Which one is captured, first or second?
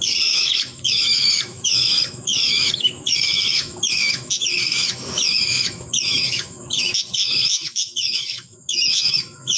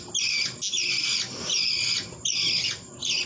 second